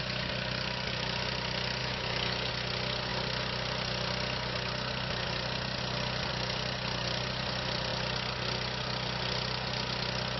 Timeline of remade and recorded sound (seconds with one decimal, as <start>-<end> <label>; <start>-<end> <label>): 0.0-1.8 recorded; 1.8-2.5 remade; 2.5-10.4 recorded

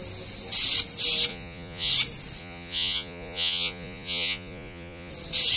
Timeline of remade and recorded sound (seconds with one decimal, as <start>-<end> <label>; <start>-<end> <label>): 0.0-1.3 recorded; 1.3-1.9 remade; 1.9-2.4 recorded; 2.4-5.1 remade; 5.1-5.6 recorded

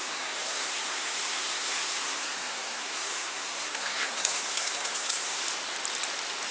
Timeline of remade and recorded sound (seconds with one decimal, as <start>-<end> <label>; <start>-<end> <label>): 0.0-5.4 remade; 5.4-6.5 recorded

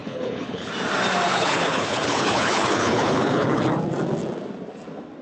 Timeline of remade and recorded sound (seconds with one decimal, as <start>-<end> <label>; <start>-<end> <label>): 0.0-0.7 remade; 0.7-1.3 recorded; 1.3-3.6 remade; 3.6-5.2 recorded

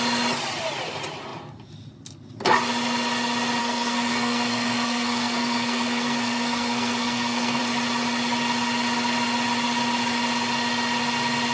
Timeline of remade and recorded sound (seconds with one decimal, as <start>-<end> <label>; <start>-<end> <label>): 0.0-3.6 recorded; 3.6-7.6 remade; 7.6-11.5 recorded

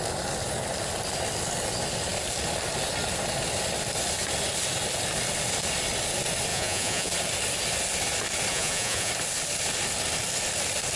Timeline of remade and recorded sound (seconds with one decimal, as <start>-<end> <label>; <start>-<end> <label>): 0.0-6.5 recorded; 6.5-7.1 remade; 7.1-8.5 recorded; 8.5-9.1 remade; 9.1-11.0 recorded